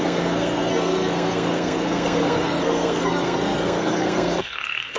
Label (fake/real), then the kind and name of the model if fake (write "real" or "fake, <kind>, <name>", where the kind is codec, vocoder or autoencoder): fake, codec, SNAC